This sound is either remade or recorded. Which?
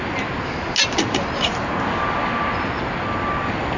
recorded